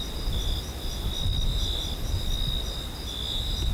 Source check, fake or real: real